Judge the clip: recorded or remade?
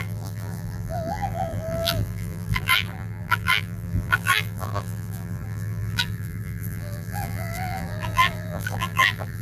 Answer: remade